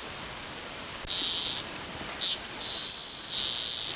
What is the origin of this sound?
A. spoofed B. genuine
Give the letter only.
B